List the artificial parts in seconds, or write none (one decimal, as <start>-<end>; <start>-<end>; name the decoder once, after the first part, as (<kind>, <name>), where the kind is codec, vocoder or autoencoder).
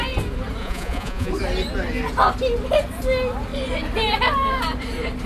0.6-1.3 (vocoder, Vocos)